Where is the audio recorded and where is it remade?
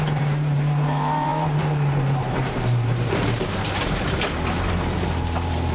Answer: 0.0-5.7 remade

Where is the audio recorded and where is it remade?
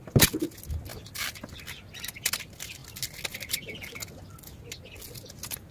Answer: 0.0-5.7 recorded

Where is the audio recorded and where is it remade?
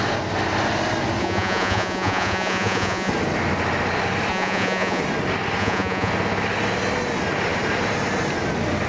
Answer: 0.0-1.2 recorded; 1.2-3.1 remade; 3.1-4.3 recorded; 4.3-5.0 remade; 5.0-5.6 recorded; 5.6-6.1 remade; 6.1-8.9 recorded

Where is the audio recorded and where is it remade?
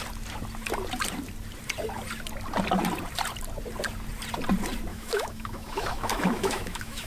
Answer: 0.0-4.9 recorded; 4.9-7.1 remade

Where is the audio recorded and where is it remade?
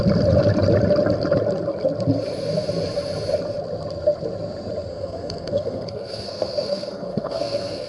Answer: 0.0-4.9 recorded; 4.9-7.9 remade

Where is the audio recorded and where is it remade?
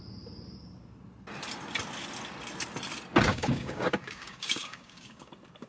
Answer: 0.0-3.3 recorded; 3.3-5.3 remade; 5.3-5.7 recorded